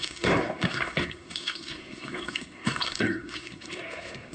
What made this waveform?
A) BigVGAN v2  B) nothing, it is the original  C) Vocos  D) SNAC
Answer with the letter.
D